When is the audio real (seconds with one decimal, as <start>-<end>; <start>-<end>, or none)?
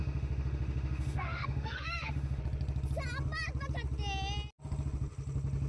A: 2.4-5.7